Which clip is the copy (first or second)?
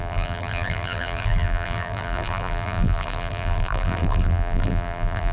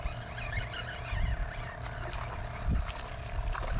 first